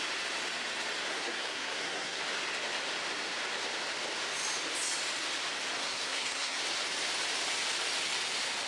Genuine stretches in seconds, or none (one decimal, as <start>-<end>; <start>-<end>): 0.0-1.1; 2.2-5.8; 6.6-8.7